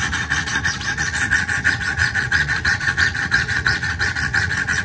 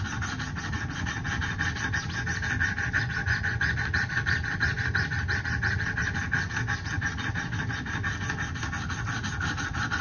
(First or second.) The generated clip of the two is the first